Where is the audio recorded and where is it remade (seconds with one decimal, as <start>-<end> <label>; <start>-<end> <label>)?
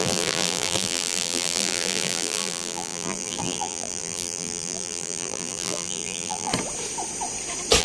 0.0-6.5 remade; 6.5-7.8 recorded